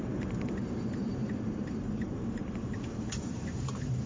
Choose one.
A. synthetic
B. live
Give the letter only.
A